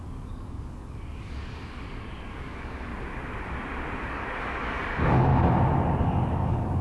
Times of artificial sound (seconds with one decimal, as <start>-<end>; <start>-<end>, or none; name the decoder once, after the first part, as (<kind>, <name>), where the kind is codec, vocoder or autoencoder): 0.0-2.9 (codec, DAC); 4.0-5.3; 6.0-6.8